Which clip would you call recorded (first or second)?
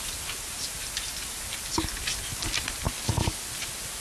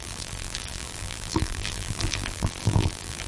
first